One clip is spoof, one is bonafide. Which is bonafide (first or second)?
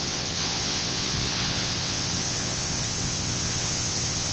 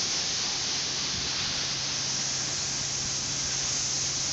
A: second